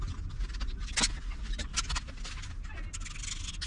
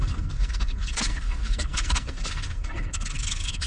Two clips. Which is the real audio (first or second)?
first